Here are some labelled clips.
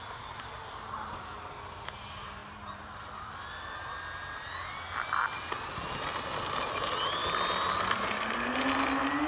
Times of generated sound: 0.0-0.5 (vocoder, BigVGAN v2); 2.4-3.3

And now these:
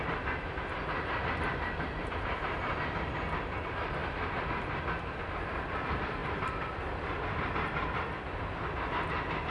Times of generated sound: 2.0-2.7 (vocoder, BigVGAN v2); 6.2-6.7

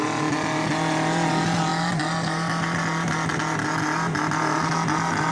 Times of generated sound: none

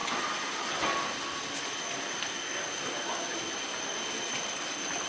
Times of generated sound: none

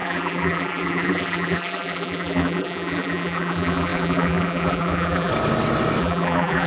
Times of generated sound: 0.0-5.3 (vocoder, BigVGAN v2); 6.0-6.7